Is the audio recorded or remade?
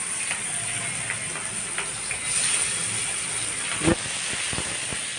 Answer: recorded